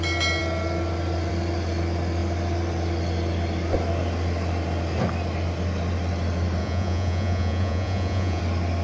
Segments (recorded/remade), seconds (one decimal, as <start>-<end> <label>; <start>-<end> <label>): 0.0-6.6 recorded; 6.6-8.4 remade; 8.4-8.8 recorded